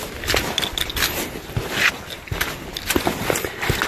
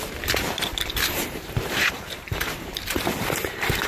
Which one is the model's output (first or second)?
second